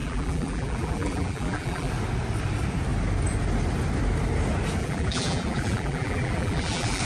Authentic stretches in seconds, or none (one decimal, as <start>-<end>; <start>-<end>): 1.9-4.8